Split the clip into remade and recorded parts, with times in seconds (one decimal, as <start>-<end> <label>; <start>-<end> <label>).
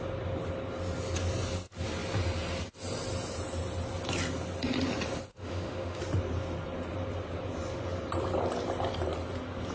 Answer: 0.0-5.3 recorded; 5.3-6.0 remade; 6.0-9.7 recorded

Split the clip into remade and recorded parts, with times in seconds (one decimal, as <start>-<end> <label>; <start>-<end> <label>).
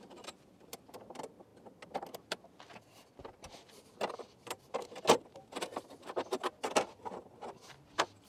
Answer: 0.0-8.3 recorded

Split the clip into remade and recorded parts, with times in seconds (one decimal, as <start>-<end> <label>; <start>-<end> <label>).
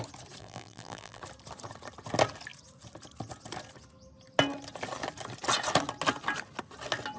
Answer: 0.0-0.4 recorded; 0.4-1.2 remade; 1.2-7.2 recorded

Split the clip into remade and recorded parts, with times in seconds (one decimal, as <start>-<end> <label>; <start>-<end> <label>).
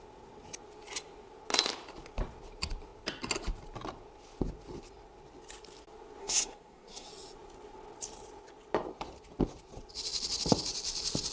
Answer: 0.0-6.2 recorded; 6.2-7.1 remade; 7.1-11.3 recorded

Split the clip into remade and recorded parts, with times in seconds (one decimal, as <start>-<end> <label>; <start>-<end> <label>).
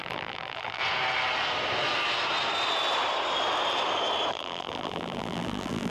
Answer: 0.0-0.8 remade; 0.8-4.3 recorded; 4.3-5.9 remade